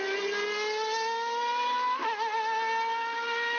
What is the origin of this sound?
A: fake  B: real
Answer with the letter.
B